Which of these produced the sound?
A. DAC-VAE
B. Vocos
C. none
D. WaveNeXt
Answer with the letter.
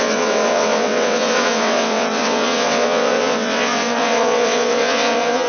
D